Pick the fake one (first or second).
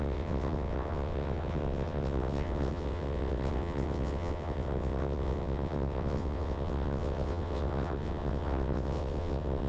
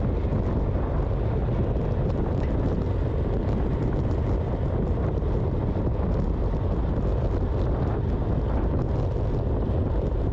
first